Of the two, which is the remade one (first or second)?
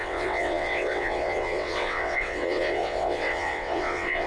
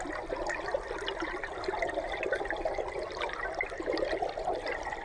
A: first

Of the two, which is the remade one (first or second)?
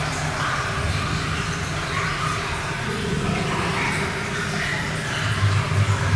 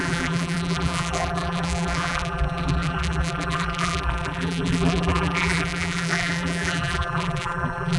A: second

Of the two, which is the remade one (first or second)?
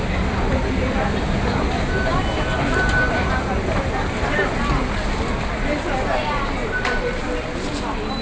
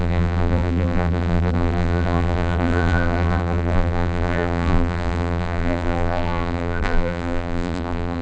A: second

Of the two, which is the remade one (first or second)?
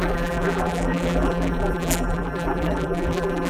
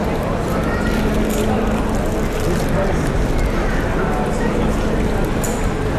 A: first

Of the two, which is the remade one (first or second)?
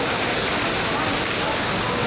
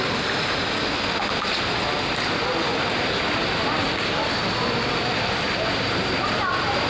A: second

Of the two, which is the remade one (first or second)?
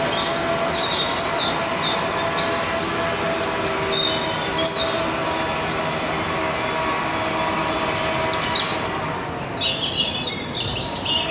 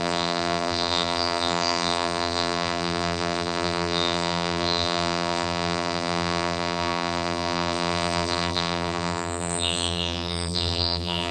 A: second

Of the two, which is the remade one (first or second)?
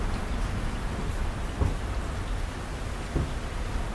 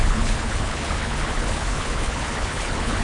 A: second